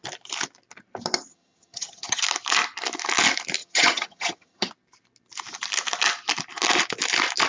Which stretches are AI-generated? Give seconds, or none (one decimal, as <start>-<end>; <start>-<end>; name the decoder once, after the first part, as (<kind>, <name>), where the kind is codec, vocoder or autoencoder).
1.3-2.2 (vocoder, HiFi-GAN); 3.6-4.7